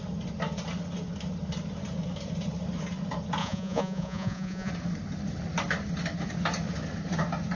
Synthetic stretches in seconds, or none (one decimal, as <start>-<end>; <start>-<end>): 3.4-4.7